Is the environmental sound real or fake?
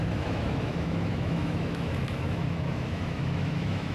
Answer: fake